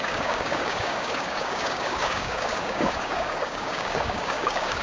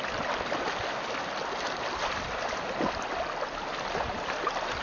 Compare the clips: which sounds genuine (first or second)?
second